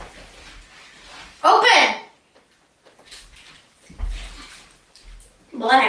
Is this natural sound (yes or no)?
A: yes